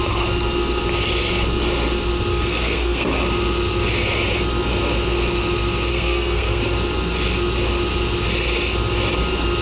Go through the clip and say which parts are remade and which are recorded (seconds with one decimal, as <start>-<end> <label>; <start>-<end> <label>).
0.0-2.3 recorded; 2.3-3.1 remade; 3.1-5.9 recorded; 5.9-6.6 remade; 6.6-9.6 recorded